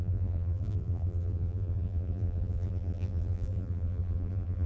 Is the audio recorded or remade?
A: remade